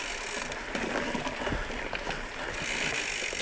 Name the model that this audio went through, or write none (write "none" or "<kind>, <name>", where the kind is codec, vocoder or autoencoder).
none